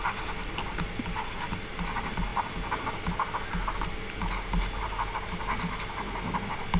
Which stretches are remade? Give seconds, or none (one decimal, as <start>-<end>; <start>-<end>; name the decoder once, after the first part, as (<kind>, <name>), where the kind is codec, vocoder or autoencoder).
none